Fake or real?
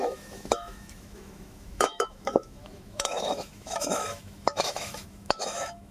fake